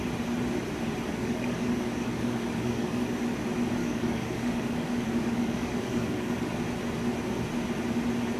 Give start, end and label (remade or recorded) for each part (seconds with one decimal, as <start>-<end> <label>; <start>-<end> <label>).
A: 0.0-1.1 recorded; 1.1-3.2 remade; 3.2-3.8 recorded; 3.8-6.6 remade; 6.6-8.4 recorded